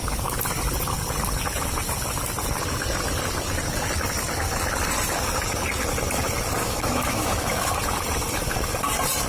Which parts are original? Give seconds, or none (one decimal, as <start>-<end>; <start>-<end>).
0.0-6.6; 7.7-9.3